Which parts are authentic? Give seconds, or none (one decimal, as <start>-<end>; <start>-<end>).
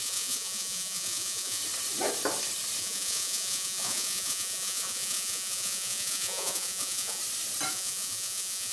1.6-2.8; 7.2-7.7